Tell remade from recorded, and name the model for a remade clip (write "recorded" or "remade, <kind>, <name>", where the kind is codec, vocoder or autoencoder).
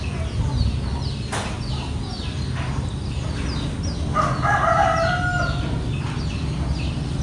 recorded